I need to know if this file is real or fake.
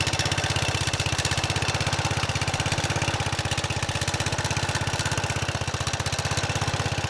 real